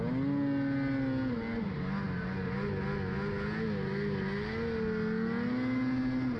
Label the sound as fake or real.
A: real